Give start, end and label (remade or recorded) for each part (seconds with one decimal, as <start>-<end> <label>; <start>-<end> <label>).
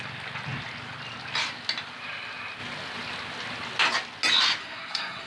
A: 0.0-4.6 recorded; 4.6-5.3 remade